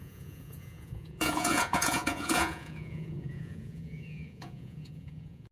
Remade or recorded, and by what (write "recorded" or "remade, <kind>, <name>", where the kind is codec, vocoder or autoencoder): remade, vocoder, Vocos